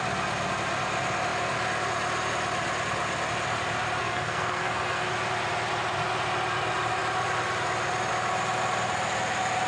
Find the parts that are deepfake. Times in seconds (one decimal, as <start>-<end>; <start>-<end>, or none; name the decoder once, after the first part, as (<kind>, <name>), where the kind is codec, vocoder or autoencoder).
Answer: 4.0-5.1 (codec, SNAC)